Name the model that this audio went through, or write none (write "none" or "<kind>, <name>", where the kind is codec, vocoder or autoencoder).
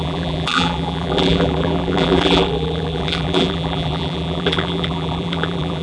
vocoder, BigVGAN v2